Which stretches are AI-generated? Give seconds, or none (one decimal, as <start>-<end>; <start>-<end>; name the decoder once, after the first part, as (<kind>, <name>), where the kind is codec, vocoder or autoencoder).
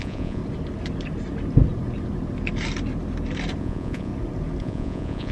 0.0-0.4 (vocoder, Vocos); 3.6-4.1; 4.6-5.3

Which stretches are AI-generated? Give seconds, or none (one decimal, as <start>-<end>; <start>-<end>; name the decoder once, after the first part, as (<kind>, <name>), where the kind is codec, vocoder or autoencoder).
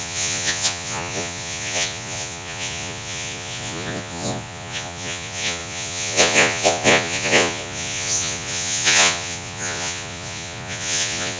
0.0-11.4 (vocoder, Vocos)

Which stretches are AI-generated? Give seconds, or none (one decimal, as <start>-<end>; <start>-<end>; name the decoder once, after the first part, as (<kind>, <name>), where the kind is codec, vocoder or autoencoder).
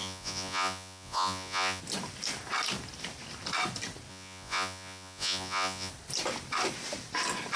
0.0-1.8 (vocoder, Vocos); 4.1-5.9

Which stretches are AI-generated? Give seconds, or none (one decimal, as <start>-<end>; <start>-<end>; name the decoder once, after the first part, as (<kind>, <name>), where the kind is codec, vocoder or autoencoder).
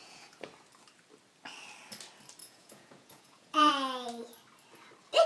0.0-0.5 (vocoder, Vocos); 2.4-3.7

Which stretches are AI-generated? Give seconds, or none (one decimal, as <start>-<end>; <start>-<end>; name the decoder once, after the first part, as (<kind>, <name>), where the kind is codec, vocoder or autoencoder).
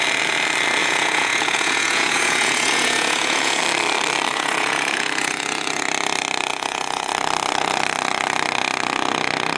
0.8-3.6 (vocoder, Vocos); 4.3-5.8; 6.5-7.1